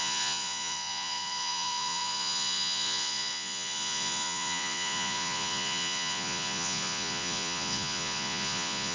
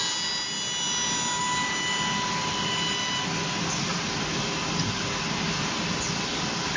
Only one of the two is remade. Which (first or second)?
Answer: first